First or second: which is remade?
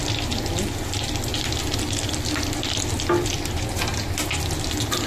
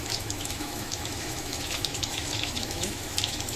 second